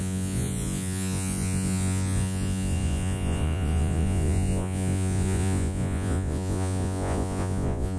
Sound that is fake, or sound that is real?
fake